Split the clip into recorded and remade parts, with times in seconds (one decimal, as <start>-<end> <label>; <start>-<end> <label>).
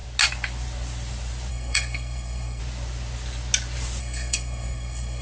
0.0-1.5 recorded; 1.5-2.6 remade; 2.6-4.0 recorded; 4.0-5.2 remade